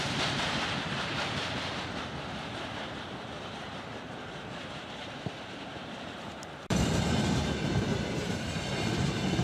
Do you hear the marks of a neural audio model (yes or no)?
yes